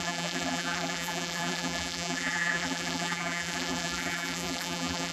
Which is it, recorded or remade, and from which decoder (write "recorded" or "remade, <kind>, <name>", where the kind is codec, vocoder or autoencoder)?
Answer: remade, vocoder, BigVGAN v2